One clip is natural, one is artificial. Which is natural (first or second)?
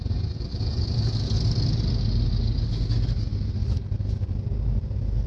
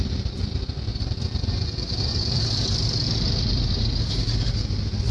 first